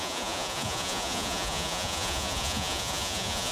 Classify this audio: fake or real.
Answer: fake